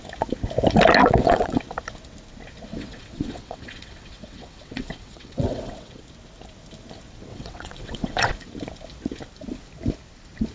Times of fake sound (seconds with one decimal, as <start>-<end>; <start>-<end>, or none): 1.0-1.6; 2.7-6.0; 7.3-8.3